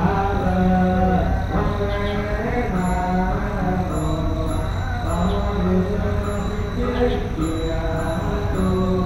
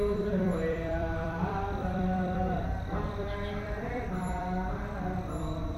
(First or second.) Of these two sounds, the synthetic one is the second